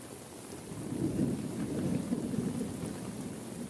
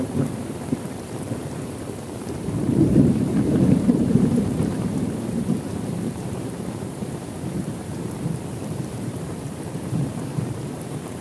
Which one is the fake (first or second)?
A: second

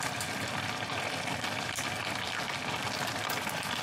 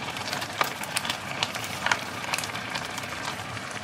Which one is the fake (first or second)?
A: second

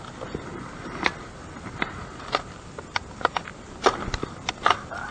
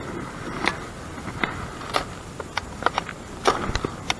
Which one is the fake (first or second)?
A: first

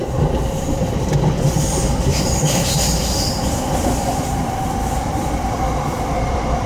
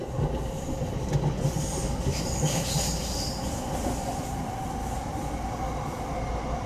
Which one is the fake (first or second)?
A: first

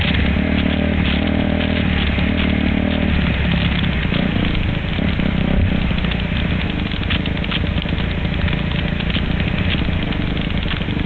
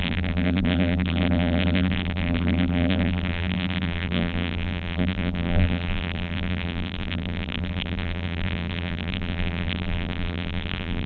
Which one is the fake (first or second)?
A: second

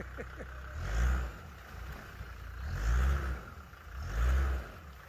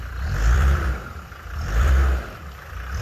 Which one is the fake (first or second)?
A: second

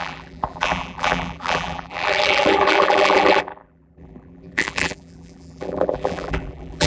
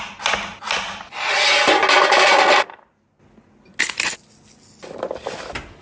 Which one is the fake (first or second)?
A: first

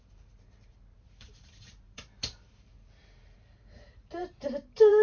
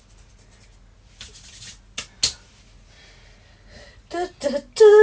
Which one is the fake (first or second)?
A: first